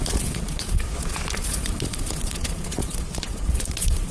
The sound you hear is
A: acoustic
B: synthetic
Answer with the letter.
B